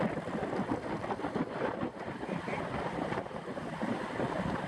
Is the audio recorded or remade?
remade